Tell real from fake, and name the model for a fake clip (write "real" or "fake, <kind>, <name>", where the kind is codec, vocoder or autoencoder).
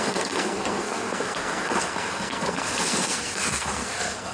fake, codec, SNAC